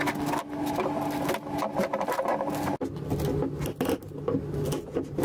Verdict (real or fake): real